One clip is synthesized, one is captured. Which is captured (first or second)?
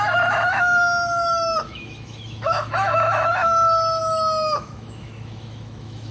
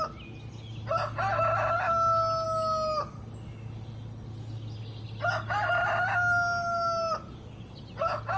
second